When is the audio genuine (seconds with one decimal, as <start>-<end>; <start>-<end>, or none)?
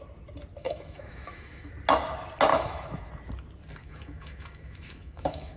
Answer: 0.0-0.6; 1.7-2.5; 3.1-3.8